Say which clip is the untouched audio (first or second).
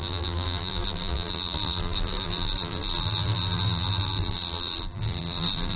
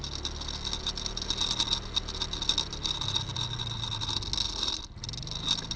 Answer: second